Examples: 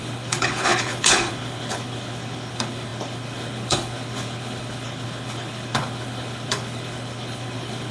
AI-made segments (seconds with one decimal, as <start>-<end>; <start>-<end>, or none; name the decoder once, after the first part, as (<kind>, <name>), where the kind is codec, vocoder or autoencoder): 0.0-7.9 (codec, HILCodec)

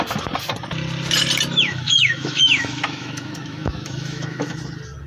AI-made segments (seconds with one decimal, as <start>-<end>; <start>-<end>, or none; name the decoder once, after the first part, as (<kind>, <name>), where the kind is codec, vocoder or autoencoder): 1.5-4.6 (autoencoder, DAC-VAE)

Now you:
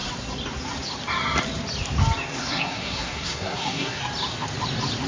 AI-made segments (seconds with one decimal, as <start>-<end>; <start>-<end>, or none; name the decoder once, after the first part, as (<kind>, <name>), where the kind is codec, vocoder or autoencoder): 2.4-4.0 (codec, SNAC)

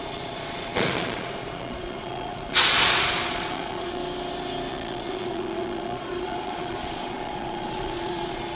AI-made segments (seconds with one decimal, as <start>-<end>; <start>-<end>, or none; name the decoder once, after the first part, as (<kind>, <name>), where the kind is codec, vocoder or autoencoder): 0.0-4.0 (vocoder, Vocos); 4.7-8.6

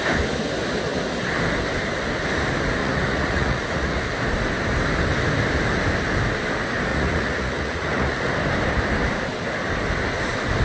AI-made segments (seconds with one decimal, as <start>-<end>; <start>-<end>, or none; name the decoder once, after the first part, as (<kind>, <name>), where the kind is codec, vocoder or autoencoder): 2.8-4.0 (vocoder, Vocos); 6.9-8.3